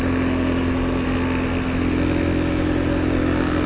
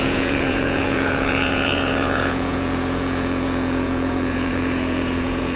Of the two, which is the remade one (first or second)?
second